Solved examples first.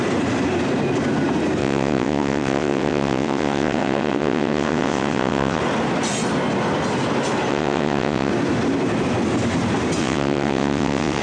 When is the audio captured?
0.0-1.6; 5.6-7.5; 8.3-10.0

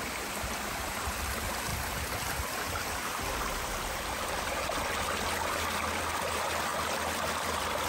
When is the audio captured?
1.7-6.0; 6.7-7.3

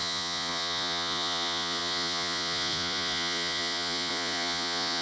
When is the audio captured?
none

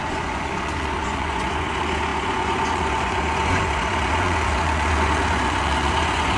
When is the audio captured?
none

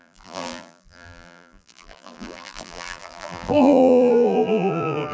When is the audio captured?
none

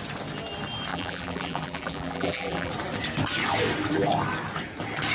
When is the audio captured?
0.0-0.9; 2.7-5.1